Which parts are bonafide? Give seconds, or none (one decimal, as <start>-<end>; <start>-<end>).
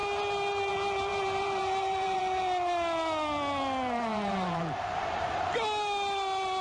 0.0-1.1; 2.2-4.1; 5.3-6.6